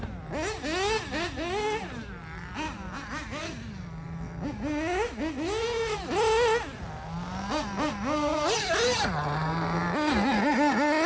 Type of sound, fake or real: real